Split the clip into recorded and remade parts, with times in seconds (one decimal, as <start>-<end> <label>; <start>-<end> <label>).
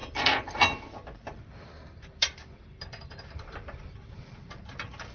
0.0-3.1 remade; 3.1-5.1 recorded